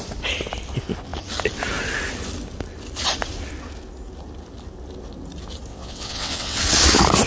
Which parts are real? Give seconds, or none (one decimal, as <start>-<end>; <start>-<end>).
0.0-5.7; 6.6-7.3